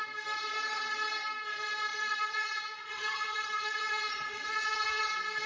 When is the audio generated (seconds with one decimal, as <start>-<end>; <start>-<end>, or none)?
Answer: 1.9-5.0